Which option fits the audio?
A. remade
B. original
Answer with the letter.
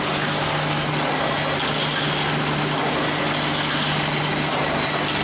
B